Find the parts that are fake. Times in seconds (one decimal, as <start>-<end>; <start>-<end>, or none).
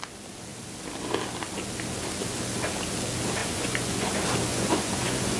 3.4-4.1; 4.5-5.4